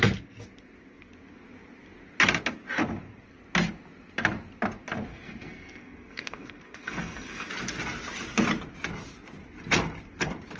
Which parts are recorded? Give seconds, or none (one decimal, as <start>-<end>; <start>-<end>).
0.0-5.1; 7.5-10.6